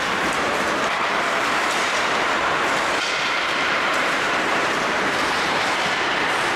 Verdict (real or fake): fake